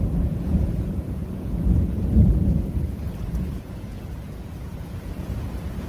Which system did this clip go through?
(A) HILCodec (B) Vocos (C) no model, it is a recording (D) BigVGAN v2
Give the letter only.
B